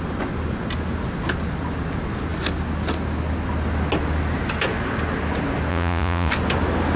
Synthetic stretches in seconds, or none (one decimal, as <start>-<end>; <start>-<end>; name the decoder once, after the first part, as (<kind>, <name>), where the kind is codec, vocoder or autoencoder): 5.7-6.3 (vocoder, Vocos)